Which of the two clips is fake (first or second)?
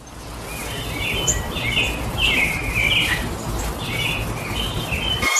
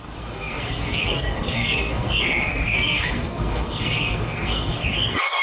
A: second